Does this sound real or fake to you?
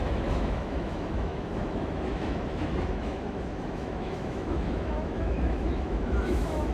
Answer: fake